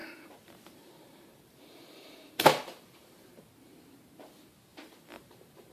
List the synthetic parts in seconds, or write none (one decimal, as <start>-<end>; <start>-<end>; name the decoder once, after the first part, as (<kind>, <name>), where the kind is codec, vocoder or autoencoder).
0.0-3.4 (vocoder, BigVGAN v2); 4.7-5.7